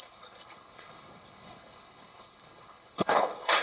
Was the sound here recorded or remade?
remade